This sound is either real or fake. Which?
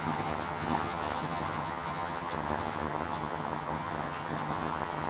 fake